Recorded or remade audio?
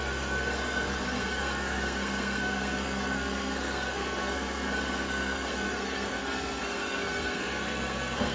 remade